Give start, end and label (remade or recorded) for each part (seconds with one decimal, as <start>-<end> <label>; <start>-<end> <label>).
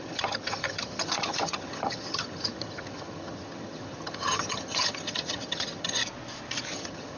0.0-6.0 remade; 6.0-6.7 recorded; 6.7-7.2 remade